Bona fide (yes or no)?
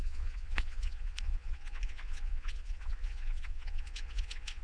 no